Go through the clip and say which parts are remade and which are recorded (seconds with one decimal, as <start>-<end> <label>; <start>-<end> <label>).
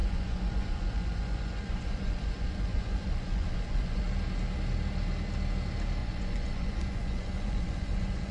0.0-4.1 remade; 4.1-6.0 recorded; 6.0-8.3 remade